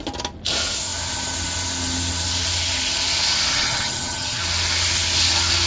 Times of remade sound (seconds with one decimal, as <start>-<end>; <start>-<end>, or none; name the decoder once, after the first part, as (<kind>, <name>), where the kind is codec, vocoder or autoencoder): 3.5-4.4 (vocoder, HiFi-GAN)